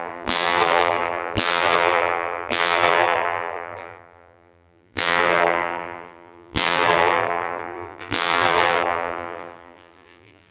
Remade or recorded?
remade